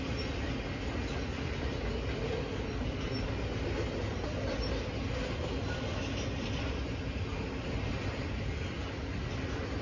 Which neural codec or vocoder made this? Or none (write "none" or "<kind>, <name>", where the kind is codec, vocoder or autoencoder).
none